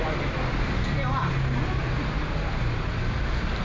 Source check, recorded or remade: recorded